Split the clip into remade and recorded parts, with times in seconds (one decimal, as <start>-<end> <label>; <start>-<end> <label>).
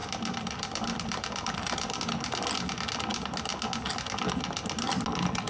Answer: 0.0-2.0 remade; 2.0-5.5 recorded